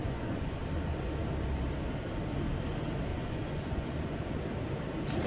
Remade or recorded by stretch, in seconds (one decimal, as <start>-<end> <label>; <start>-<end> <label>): 0.0-0.6 remade; 0.6-3.1 recorded; 3.1-4.4 remade; 4.4-5.3 recorded